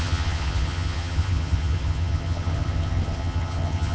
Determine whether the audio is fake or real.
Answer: fake